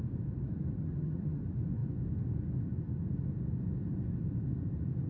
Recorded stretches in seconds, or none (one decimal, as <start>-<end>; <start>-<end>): 0.0-0.8; 1.4-5.1